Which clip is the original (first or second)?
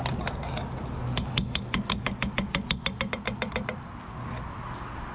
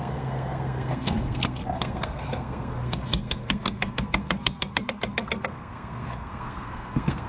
first